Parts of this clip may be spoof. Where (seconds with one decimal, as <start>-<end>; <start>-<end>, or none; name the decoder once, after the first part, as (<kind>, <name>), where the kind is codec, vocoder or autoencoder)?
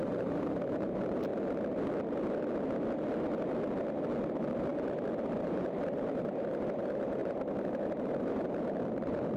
0.0-1.3 (vocoder, BigVGAN v2); 4.3-4.7; 5.3-9.4